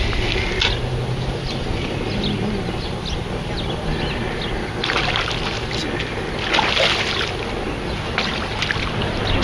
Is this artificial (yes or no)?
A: no